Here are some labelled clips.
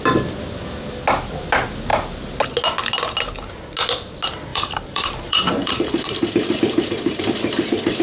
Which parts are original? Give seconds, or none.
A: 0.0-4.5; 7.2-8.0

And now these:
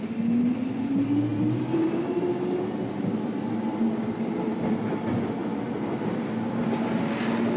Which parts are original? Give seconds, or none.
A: 0.0-1.3; 4.9-5.4; 6.6-7.6

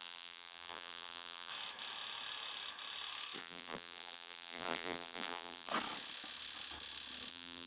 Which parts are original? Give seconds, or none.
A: 1.5-3.4; 5.7-7.3

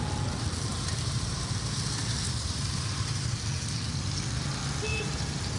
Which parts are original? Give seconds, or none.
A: 0.0-0.7; 3.4-4.9

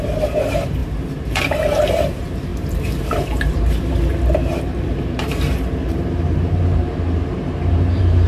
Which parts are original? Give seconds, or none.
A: none

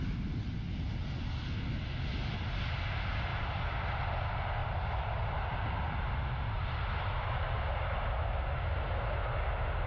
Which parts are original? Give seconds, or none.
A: 0.0-3.3; 4.1-4.6; 7.7-9.9

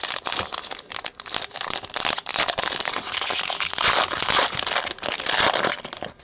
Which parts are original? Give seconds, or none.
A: 0.0-6.2